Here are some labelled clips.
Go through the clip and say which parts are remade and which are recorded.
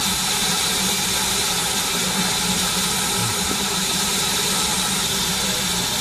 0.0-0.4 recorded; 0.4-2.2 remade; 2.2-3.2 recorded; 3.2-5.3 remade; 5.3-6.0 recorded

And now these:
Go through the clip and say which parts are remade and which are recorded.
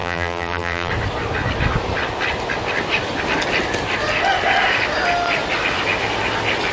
0.0-0.9 remade; 0.9-6.7 recorded